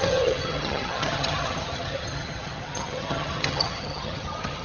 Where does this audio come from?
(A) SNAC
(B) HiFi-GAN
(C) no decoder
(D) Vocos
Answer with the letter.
B